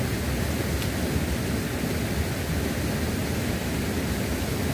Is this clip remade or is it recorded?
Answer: recorded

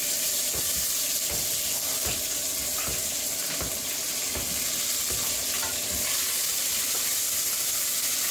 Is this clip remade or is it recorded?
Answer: recorded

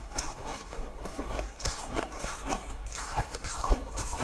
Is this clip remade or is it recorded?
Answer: remade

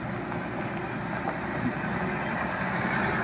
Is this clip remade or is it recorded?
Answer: recorded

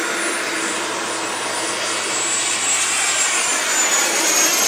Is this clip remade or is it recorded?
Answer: recorded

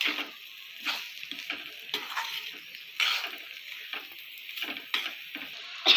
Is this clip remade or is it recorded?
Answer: recorded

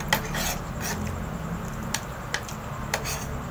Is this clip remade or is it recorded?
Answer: recorded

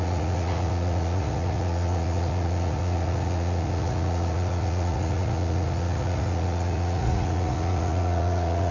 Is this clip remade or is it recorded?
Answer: remade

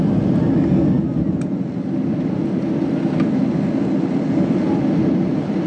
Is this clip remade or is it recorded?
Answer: recorded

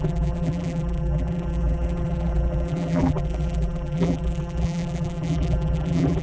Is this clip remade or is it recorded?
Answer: remade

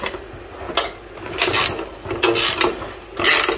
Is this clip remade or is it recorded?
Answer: recorded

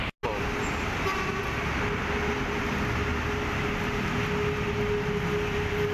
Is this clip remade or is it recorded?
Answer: recorded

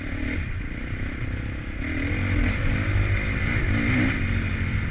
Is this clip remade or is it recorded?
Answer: recorded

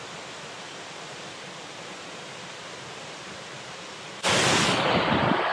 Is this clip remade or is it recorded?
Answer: recorded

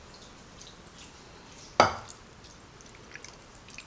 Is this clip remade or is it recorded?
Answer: recorded